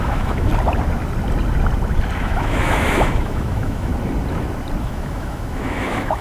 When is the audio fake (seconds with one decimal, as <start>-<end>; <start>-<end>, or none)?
0.0-0.5; 2.2-3.9; 4.8-6.2